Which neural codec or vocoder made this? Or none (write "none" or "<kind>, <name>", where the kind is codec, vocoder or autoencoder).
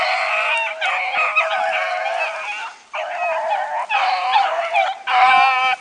none